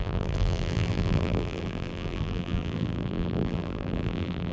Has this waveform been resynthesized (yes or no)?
yes